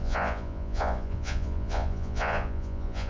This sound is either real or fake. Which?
fake